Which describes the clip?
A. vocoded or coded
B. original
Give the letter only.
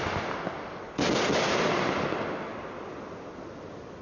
B